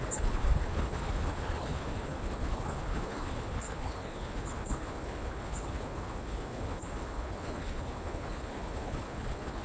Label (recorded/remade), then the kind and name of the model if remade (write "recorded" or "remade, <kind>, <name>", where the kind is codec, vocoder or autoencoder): remade, codec, HILCodec